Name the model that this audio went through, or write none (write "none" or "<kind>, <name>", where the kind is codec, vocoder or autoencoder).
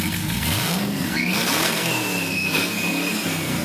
codec, SNAC